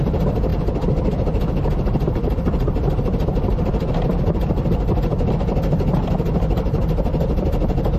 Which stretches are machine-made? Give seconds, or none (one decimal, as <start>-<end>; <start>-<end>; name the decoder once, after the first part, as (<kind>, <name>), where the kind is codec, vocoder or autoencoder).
none